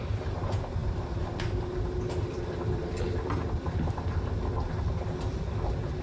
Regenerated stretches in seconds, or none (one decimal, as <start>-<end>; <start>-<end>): none

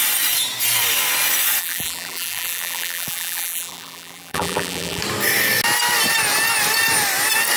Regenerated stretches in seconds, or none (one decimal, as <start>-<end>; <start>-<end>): 1.6-5.0

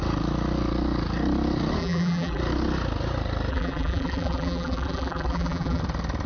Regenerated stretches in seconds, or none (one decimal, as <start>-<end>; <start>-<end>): 1.8-2.4; 3.5-5.8

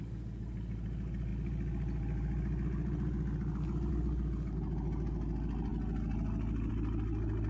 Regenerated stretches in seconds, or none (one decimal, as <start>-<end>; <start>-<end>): none